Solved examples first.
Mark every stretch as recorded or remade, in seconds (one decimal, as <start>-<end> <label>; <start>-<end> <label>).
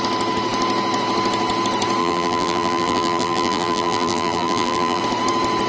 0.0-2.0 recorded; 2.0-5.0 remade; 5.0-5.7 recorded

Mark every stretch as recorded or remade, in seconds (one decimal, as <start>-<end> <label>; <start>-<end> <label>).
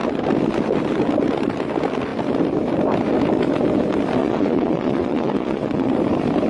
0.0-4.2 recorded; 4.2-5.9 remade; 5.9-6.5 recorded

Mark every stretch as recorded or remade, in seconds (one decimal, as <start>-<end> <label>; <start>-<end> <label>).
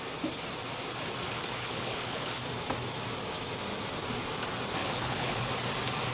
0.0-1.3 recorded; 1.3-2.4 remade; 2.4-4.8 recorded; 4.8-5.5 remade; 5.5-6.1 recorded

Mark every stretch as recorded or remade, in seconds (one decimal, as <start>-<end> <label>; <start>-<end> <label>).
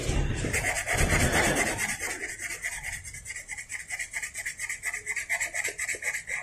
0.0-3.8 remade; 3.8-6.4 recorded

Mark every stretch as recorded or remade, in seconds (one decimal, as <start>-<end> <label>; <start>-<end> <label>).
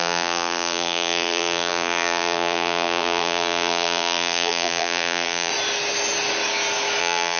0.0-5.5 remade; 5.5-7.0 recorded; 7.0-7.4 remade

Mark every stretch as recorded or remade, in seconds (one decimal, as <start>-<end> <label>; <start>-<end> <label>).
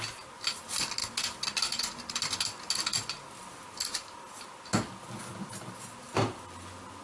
0.0-7.0 recorded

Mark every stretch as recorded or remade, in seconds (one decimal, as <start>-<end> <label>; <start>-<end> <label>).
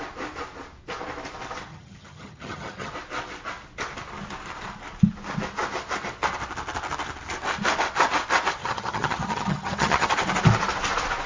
0.0-1.7 recorded; 1.7-2.9 remade; 2.9-8.6 recorded; 8.6-10.1 remade; 10.1-11.3 recorded